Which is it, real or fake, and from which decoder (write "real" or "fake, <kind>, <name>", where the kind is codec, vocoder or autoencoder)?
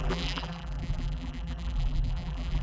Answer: fake, vocoder, BigVGAN v2